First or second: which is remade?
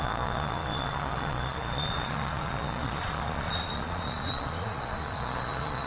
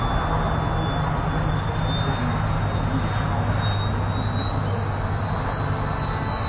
first